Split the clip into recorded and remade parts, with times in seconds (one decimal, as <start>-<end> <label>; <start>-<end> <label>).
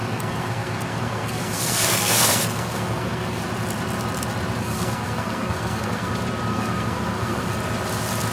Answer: 0.0-3.4 remade; 3.4-4.6 recorded; 4.6-6.1 remade; 6.1-6.5 recorded; 6.5-7.5 remade; 7.5-8.3 recorded